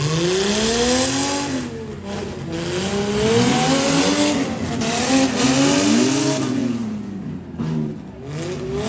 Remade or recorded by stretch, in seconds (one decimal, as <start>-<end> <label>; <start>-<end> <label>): 0.0-8.9 recorded